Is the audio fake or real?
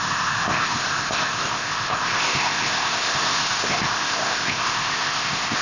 fake